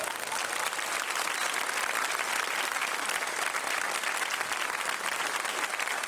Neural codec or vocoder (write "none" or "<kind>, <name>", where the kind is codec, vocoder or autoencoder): none